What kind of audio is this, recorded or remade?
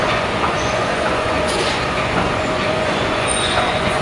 remade